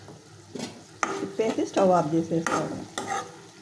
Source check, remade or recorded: recorded